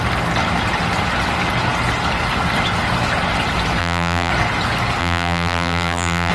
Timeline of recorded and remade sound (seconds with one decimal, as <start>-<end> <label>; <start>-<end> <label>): 0.0-3.8 recorded; 3.8-4.3 remade; 4.3-5.0 recorded; 5.0-6.3 remade